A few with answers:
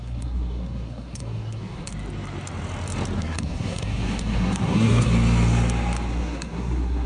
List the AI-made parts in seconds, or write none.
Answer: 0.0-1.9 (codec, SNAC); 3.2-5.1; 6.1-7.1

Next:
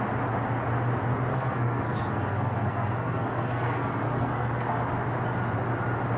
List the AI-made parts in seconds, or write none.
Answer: 1.3-4.9 (codec, SNAC)

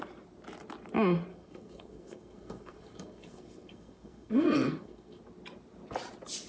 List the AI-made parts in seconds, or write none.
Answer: 1.3-5.2 (codec, SNAC)